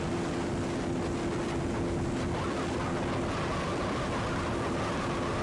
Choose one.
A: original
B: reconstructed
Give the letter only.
A